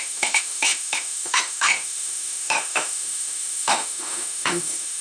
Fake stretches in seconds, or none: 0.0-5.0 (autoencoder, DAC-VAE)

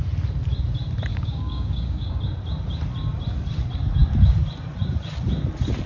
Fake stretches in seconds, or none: 1.1-2.2 (codec, DAC)

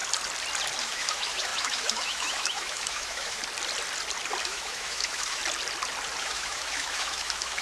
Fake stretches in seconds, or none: 0.8-3.4 (autoencoder, DAC-VAE); 4.4-5.4; 6.2-7.6